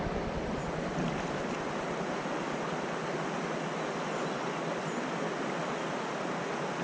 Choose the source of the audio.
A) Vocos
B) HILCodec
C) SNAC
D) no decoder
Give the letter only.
D